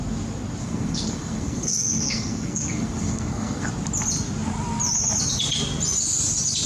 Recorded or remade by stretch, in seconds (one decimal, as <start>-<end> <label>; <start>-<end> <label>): 0.0-0.6 recorded; 0.6-3.7 remade; 3.7-6.7 recorded